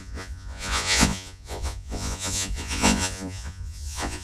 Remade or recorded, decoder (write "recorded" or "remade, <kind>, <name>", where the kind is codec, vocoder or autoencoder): remade, vocoder, Vocos